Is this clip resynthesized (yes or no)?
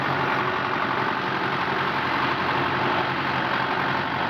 no